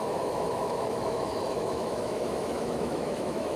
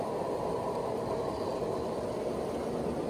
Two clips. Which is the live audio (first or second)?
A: second